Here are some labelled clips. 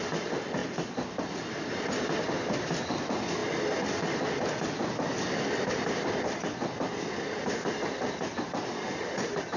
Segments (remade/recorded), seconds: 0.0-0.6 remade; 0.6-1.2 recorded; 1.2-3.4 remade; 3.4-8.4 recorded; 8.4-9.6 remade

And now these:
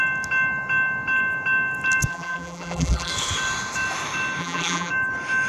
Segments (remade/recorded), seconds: 0.0-2.1 recorded; 2.1-3.1 remade; 3.1-4.4 recorded; 4.4-4.9 remade; 4.9-5.5 recorded

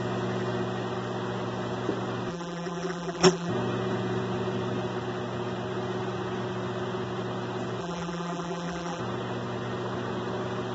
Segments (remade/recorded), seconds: 0.0-2.3 recorded; 2.3-3.5 remade; 3.5-7.8 recorded; 7.8-9.0 remade; 9.0-10.7 recorded

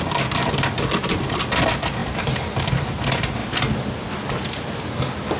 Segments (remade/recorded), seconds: 0.0-3.4 recorded; 3.4-4.9 remade; 4.9-5.4 recorded

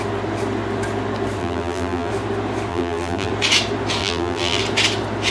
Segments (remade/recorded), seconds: 0.0-1.4 recorded; 1.4-2.1 remade; 2.1-2.7 recorded; 2.7-3.3 remade; 3.3-4.0 recorded; 4.0-4.6 remade; 4.6-5.3 recorded